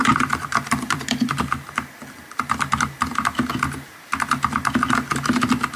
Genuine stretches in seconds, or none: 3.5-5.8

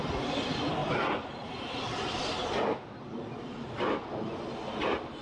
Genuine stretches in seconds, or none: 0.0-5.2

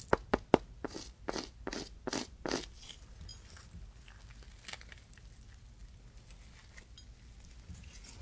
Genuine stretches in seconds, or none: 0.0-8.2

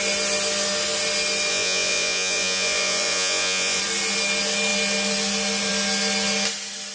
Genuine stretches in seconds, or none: 0.0-1.5; 3.8-6.9

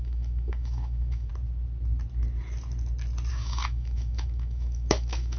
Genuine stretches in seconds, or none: 1.3-3.3

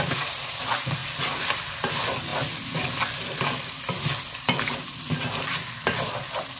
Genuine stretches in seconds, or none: 0.0-6.6

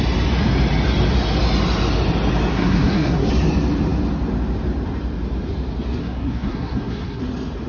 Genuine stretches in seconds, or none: 0.0-2.5; 3.3-6.0; 7.2-7.7